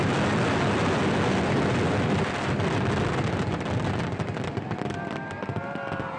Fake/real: real